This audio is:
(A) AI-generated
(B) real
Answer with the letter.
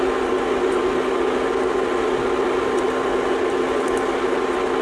B